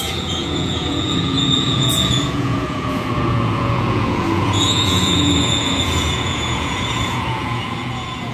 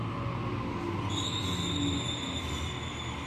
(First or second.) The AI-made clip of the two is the first